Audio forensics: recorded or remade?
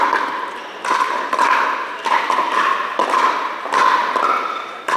recorded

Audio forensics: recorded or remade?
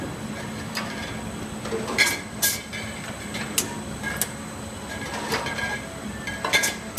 recorded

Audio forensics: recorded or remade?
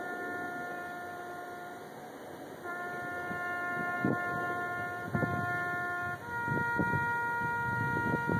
recorded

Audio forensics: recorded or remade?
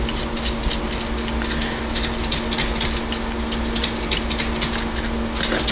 recorded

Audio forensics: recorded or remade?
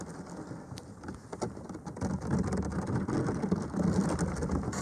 recorded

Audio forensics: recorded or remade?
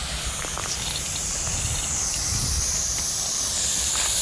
remade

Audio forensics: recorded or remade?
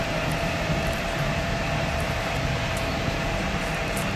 remade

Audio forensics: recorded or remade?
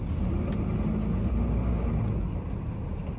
recorded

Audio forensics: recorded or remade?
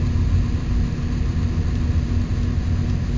recorded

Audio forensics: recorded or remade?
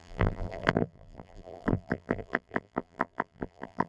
remade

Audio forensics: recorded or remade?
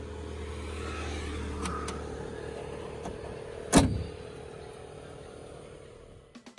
recorded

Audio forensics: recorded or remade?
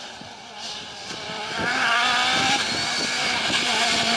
remade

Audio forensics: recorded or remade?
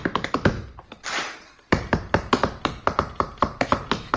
remade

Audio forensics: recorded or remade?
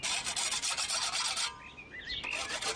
recorded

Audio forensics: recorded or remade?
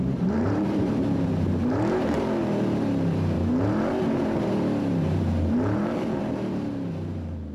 remade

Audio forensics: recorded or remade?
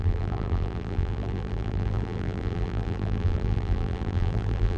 remade